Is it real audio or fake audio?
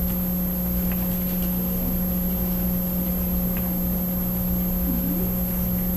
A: real